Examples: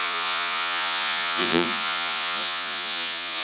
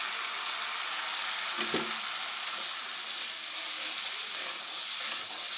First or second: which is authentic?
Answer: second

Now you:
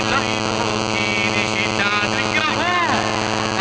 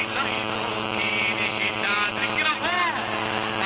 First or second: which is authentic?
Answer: first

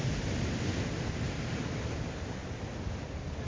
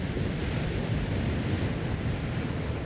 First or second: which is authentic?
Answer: first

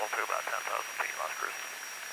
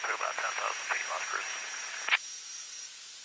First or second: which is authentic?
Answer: first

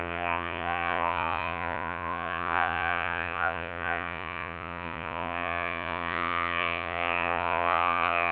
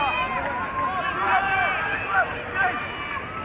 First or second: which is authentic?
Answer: second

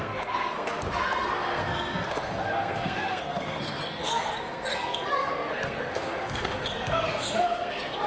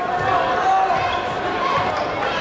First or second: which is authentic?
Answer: second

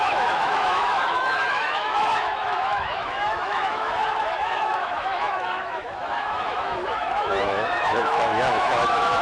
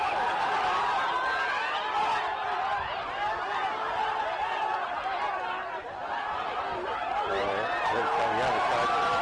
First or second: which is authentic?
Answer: second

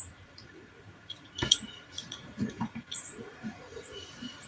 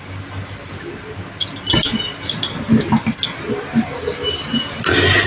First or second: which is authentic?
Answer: second